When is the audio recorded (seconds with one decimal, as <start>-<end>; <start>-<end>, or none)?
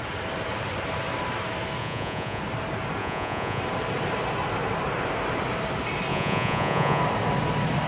0.0-1.8; 2.4-3.0; 3.6-6.1; 7.0-7.9